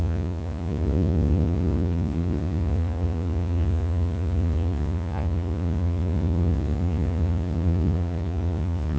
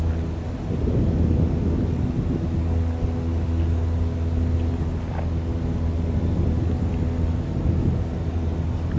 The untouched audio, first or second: second